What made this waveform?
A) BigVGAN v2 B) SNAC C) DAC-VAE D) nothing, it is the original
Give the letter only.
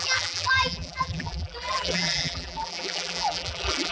A